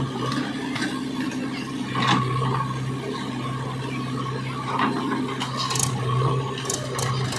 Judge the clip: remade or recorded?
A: recorded